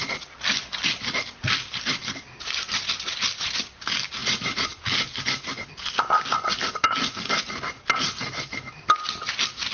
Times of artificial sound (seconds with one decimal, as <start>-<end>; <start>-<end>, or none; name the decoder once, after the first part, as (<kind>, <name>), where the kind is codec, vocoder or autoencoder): none